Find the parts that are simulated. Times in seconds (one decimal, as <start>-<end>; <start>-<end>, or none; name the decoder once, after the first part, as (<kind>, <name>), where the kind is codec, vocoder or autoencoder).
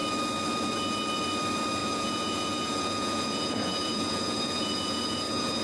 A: 1.8-5.6 (vocoder, Vocos)